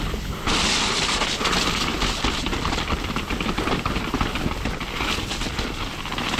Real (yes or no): yes